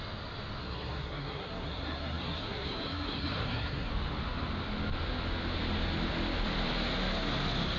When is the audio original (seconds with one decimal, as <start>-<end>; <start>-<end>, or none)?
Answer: 0.0-0.6; 3.9-7.8